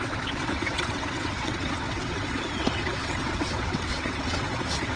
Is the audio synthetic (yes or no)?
yes